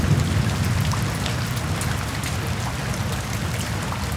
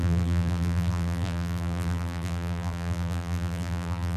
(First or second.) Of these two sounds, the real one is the first